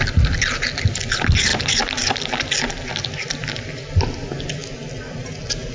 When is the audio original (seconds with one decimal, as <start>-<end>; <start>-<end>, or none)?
0.0-5.7